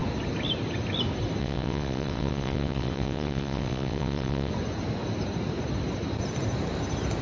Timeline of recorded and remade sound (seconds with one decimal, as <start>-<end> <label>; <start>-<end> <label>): 0.0-1.4 recorded; 1.4-4.5 remade; 4.5-7.2 recorded